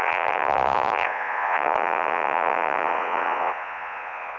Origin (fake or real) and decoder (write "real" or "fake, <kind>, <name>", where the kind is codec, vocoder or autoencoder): fake, vocoder, Vocos